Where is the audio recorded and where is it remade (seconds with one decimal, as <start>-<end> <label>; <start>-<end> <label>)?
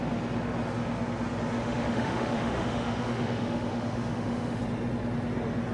0.0-1.6 recorded; 1.6-4.6 remade; 4.6-5.7 recorded